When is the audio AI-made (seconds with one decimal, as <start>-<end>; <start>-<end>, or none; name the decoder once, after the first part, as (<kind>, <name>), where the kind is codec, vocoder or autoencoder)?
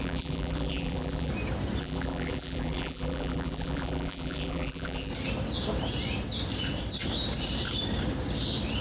0.0-1.3 (vocoder, BigVGAN v2); 1.8-5.1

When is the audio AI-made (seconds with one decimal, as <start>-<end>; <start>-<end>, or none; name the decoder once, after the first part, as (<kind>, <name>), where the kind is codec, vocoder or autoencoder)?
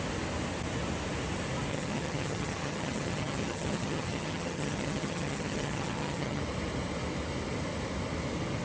1.7-6.4 (vocoder, HiFi-GAN)